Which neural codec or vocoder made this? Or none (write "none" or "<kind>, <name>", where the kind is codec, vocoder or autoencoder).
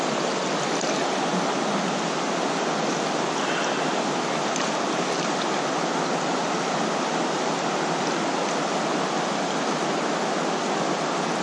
none